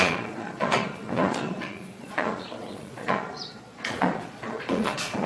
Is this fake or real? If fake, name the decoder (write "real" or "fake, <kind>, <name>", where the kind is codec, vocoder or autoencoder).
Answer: fake, vocoder, Vocos